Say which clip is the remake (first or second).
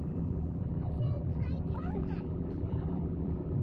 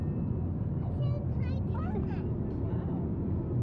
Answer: first